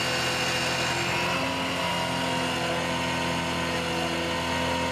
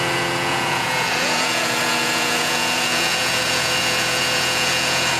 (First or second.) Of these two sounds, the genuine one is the first